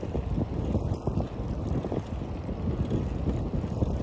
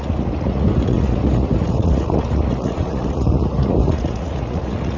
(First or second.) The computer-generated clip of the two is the second